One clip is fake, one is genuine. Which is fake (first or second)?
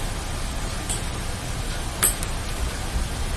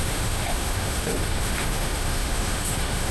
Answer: second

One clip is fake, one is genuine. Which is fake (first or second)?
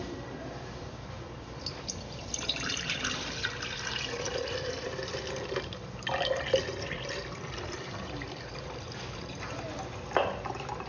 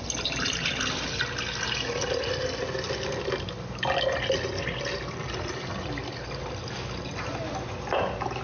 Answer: first